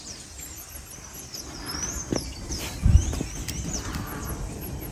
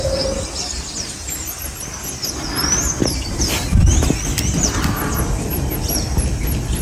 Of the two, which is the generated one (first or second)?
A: first